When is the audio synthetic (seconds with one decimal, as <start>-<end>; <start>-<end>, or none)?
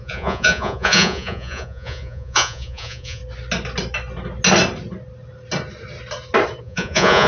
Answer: 0.0-3.2; 6.6-7.3